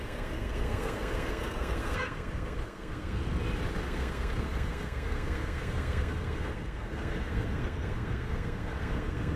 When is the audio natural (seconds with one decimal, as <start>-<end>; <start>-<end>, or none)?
3.2-3.8